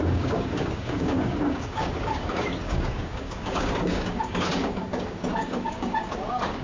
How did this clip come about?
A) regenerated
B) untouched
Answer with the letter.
A